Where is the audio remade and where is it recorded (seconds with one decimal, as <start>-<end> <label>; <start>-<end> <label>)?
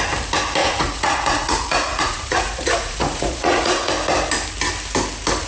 0.0-0.6 recorded; 0.6-3.9 remade; 3.9-5.5 recorded